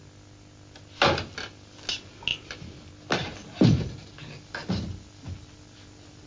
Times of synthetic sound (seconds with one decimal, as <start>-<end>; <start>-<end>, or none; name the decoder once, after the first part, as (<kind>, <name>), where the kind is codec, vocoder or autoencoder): none